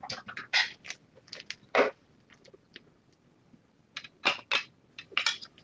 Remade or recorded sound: recorded